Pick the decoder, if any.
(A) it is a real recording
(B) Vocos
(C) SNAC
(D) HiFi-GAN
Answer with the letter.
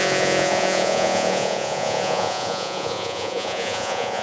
B